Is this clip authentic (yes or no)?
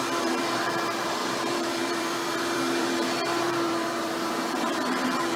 no